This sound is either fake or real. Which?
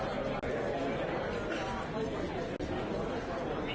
real